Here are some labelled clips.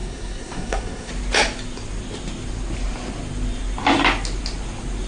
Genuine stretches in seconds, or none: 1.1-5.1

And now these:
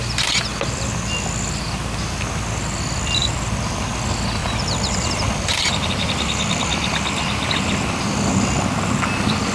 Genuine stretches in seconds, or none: 0.0-3.2; 3.9-4.4; 5.9-9.5